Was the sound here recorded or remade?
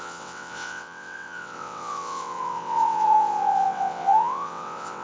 remade